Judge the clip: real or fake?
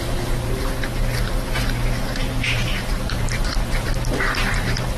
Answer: fake